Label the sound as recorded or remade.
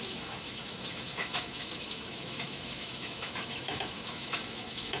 remade